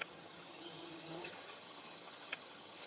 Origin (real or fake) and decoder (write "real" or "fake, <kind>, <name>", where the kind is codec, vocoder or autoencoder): fake, vocoder, HiFi-GAN